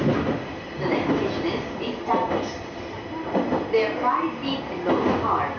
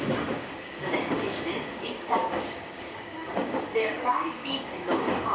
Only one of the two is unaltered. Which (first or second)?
first